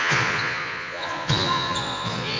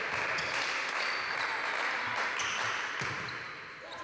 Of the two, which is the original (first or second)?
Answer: second